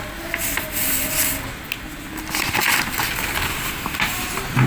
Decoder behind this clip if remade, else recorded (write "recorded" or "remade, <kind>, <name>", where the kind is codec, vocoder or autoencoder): recorded